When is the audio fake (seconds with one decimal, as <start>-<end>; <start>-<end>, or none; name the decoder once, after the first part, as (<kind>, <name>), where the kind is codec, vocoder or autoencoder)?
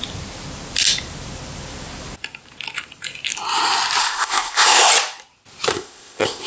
4.0-4.9 (codec, ZipCodec); 5.7-6.5